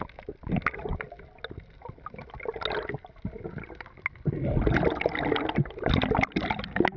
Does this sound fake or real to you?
real